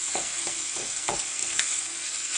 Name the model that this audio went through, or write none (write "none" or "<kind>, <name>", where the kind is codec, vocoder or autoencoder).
codec, SNAC